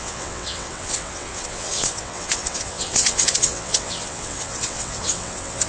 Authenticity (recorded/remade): remade